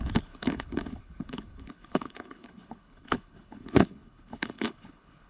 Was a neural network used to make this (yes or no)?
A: yes